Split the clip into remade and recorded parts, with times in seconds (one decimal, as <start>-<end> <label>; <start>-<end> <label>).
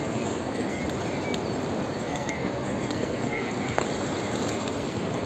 0.0-0.8 remade; 0.8-2.0 recorded; 2.0-3.8 remade; 3.8-4.5 recorded; 4.5-5.3 remade